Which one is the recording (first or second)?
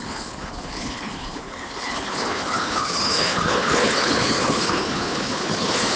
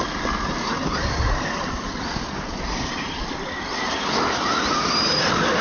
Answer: second